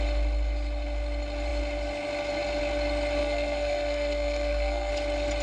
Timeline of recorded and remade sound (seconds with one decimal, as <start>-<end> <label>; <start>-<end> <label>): 0.0-3.2 recorded; 3.2-4.9 remade; 4.9-5.4 recorded

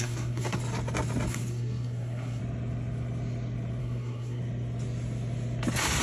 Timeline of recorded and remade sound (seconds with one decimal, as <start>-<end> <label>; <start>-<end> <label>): 0.0-0.6 remade; 0.6-1.3 recorded; 1.3-2.4 remade; 2.4-3.8 recorded; 3.8-4.4 remade; 4.4-6.0 recorded